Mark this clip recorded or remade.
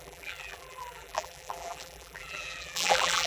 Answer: remade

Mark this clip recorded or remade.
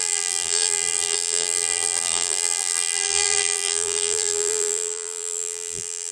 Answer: remade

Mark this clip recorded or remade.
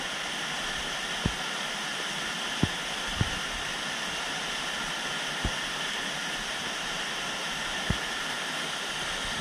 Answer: recorded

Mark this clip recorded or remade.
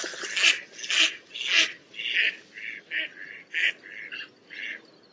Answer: recorded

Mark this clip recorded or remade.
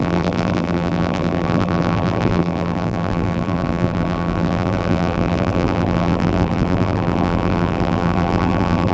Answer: remade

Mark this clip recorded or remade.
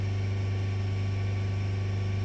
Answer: recorded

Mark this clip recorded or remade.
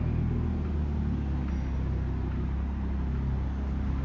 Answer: recorded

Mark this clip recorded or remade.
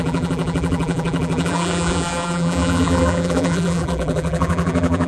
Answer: remade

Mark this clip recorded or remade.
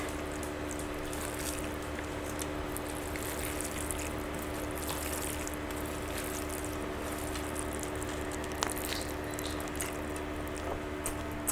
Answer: recorded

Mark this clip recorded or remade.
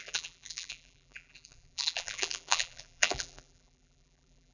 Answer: remade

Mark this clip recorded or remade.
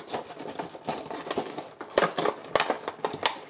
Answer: recorded